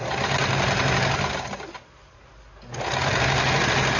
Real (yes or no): yes